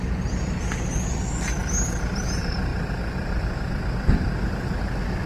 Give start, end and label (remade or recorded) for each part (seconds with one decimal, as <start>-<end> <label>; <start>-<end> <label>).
0.0-5.3 recorded